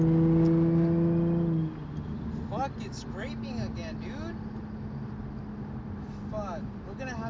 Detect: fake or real real